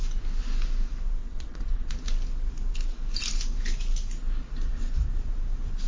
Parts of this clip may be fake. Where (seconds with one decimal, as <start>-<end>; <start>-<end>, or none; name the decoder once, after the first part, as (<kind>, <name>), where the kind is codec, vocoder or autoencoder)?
1.2-1.9 (vocoder, WaveNeXt)